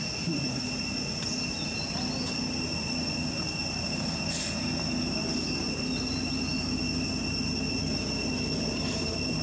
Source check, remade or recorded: recorded